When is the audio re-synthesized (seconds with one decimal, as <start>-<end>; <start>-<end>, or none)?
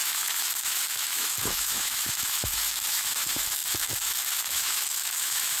0.0-5.6